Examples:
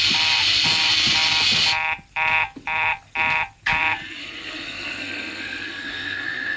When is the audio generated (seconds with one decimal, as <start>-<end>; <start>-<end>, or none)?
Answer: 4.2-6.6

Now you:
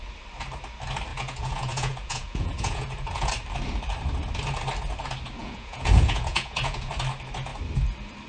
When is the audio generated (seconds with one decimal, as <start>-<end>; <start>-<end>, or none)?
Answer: 1.1-3.3; 5.4-6.9

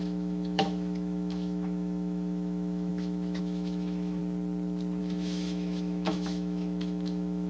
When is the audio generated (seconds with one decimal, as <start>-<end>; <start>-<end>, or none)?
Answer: 0.0-4.2; 5.0-7.5

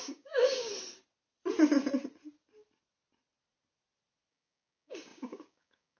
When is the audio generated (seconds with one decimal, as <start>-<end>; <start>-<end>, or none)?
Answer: 0.0-0.7; 4.3-6.0